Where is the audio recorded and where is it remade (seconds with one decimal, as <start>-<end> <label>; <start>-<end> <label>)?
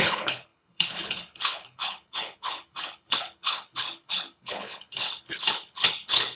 0.0-6.4 remade